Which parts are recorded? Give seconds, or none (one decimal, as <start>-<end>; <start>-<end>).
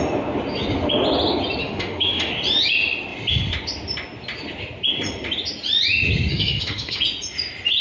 0.0-1.6; 2.3-6.3; 7.0-7.8